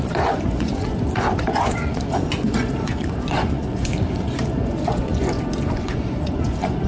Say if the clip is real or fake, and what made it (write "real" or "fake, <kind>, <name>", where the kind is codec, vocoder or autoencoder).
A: fake, vocoder, Vocos